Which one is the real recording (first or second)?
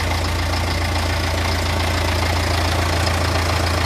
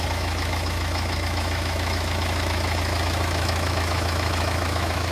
first